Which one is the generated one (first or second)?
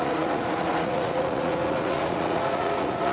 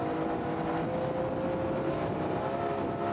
first